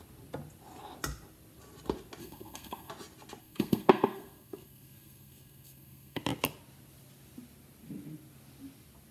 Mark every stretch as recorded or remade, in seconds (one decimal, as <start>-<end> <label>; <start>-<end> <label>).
0.0-2.2 recorded; 2.2-2.9 remade; 2.9-3.4 recorded; 3.4-6.2 remade; 6.2-9.1 recorded